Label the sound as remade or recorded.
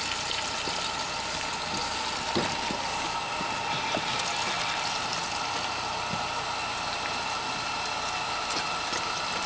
recorded